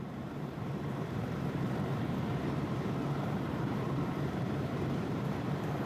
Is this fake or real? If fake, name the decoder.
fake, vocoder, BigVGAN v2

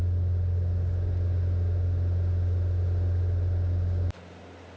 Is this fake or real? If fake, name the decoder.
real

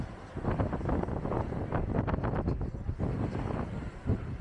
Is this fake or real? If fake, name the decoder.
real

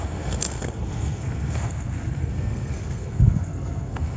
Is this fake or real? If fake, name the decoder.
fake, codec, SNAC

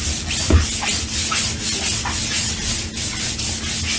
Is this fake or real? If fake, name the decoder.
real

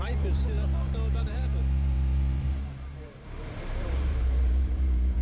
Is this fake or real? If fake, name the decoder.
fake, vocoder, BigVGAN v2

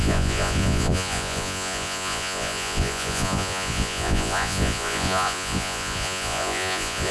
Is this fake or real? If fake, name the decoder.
fake, vocoder, Vocos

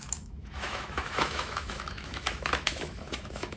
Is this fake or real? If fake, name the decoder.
fake, autoencoder, DAC-VAE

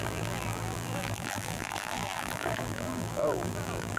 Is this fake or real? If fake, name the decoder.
fake, vocoder, BigVGAN v2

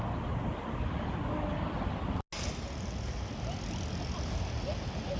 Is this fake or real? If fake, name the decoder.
real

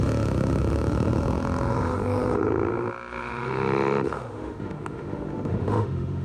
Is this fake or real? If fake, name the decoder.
fake, autoencoder, DAC-VAE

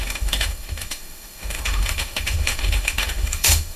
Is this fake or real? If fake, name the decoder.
fake, autoencoder, DAC-VAE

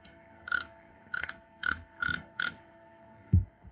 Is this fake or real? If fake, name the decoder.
fake, codec, SNAC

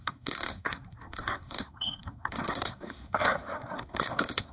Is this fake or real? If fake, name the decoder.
fake, codec, SNAC